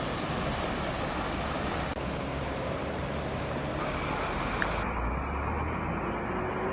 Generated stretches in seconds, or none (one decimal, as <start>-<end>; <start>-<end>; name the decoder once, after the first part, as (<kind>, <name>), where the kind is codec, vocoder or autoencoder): 1.9-5.9 (vocoder, BigVGAN v2)